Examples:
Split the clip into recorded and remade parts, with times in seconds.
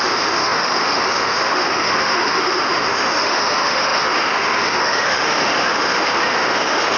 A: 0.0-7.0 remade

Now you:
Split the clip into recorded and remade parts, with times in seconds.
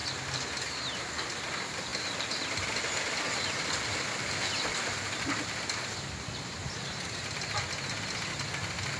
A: 0.0-9.0 recorded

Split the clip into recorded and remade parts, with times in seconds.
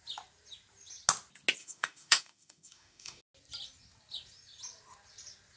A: 0.0-1.6 recorded; 1.6-3.2 remade; 3.2-5.6 recorded